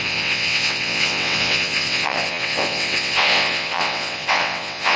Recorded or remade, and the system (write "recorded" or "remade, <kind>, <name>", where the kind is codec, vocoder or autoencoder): remade, vocoder, WaveNeXt